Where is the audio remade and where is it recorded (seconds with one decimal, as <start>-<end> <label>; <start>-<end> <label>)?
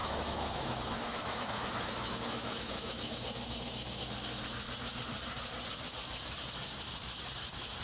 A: 0.0-4.0 remade; 4.0-7.8 recorded